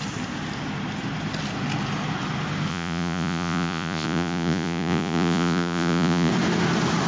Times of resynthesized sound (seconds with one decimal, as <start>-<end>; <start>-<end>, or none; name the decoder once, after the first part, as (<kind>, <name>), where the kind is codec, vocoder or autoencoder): 2.7-6.3 (vocoder, Vocos)